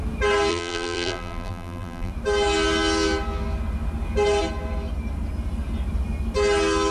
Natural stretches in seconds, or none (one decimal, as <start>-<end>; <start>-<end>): 0.0-0.5; 2.1-6.9